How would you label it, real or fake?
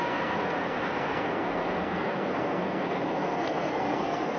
fake